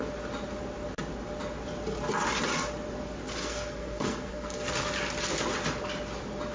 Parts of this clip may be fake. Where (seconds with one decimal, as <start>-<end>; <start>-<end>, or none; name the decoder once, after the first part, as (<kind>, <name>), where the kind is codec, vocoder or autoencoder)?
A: 3.4-4.7 (codec, SNAC)